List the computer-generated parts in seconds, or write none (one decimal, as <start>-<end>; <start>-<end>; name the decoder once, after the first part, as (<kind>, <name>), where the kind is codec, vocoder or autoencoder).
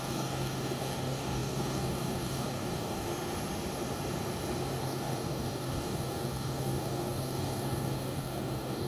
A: 0.0-3.1 (codec, DAC); 4.8-8.9